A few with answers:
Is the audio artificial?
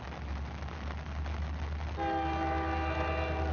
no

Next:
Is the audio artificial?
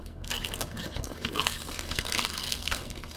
yes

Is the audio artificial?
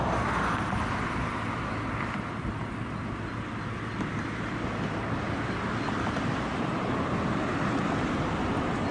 no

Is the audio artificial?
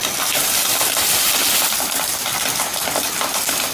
no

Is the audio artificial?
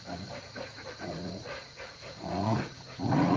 yes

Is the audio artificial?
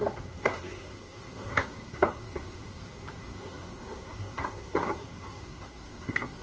yes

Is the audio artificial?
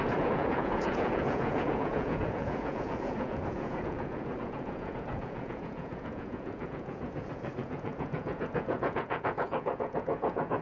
yes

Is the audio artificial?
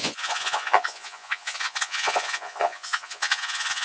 yes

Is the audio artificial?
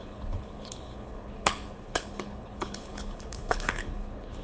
yes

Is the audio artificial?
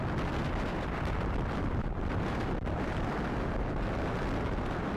no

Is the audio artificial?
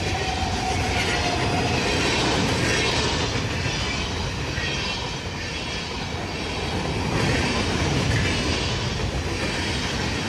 no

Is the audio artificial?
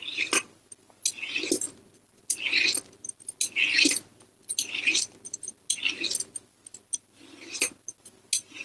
no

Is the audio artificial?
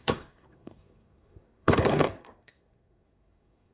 yes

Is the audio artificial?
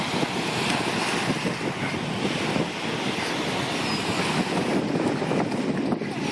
no